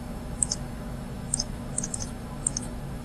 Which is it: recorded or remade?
remade